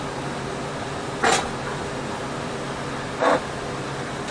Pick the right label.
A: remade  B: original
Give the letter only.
B